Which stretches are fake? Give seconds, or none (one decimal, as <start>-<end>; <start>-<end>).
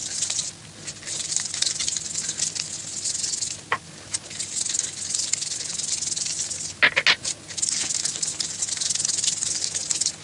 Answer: 0.0-2.2